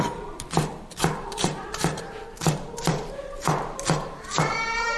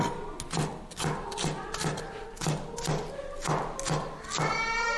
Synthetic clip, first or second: first